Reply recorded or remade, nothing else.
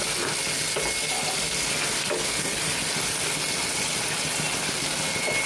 recorded